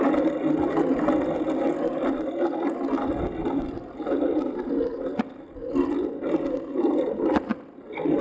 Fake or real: real